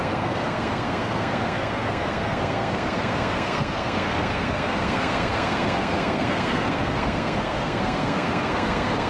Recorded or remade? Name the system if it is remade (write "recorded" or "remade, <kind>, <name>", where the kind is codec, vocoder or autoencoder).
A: remade, codec, SNAC